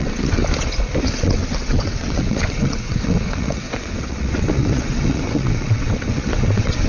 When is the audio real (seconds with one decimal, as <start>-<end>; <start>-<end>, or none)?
0.4-1.0